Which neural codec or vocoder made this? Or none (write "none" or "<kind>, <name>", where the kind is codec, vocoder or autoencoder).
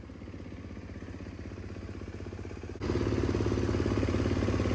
none